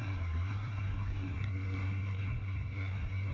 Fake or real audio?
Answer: fake